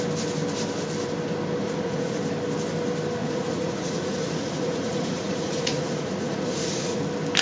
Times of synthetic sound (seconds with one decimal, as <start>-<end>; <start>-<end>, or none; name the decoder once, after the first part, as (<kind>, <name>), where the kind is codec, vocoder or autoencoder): 1.6-2.2 (vocoder, Vocos); 3.2-7.0